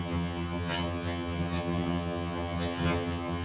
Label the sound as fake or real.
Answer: fake